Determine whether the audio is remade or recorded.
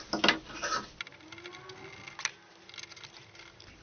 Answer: recorded